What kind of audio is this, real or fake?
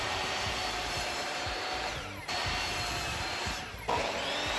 fake